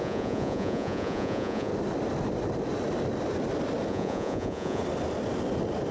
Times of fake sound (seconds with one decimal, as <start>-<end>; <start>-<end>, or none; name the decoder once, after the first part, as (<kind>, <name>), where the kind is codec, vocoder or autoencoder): 0.0-1.7 (vocoder, Vocos); 3.9-4.8